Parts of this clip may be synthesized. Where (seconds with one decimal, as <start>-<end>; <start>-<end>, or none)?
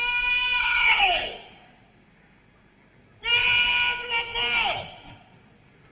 0.6-1.3